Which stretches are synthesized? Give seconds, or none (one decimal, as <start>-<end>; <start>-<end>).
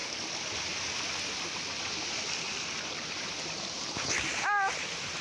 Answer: none